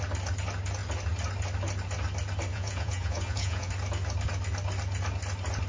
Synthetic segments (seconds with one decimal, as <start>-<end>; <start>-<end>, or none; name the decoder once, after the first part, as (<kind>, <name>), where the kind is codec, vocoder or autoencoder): 2.5-3.7 (vocoder, Vocos)